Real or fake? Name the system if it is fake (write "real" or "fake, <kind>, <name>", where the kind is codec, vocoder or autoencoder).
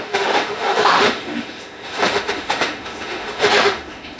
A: fake, autoencoder, DAC-VAE